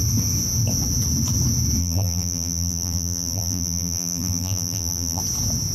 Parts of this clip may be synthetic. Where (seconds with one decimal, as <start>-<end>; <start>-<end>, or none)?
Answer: 1.8-5.2